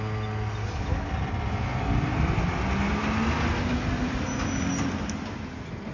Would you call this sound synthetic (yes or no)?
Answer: no